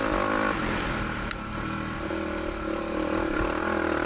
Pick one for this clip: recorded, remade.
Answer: recorded